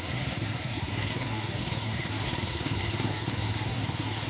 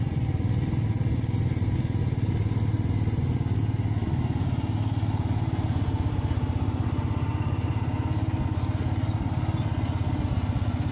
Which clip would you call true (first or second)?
second